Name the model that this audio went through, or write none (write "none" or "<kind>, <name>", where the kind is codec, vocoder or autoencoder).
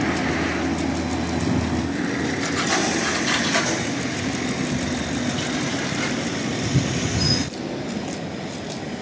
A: none